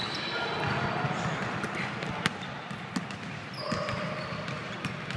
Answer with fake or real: real